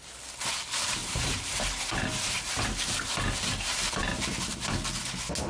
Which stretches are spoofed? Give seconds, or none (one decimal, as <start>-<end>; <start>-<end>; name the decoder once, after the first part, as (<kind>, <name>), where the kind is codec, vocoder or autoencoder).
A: 1.0-3.1 (vocoder, BigVGAN v2)